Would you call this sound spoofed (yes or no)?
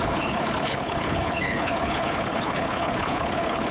yes